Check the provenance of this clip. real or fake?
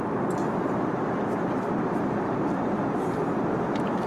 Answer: real